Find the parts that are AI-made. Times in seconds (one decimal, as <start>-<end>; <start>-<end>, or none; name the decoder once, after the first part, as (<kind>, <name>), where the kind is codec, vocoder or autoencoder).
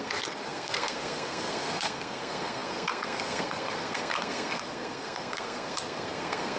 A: 0.0-6.6 (codec, SNAC)